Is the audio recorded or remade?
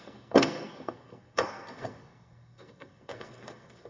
remade